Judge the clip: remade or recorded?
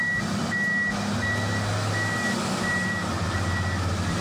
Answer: recorded